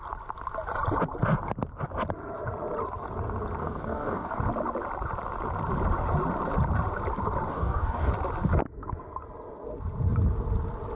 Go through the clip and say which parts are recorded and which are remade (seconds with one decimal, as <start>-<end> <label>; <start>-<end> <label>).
0.0-3.6 recorded; 3.6-4.4 remade; 4.4-7.5 recorded; 7.5-8.1 remade; 8.1-10.9 recorded